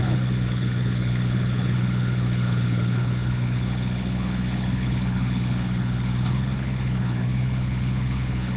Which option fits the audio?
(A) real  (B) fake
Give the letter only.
B